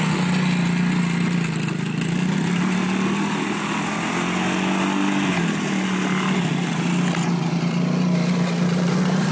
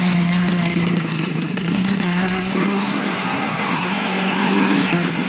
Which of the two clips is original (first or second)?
first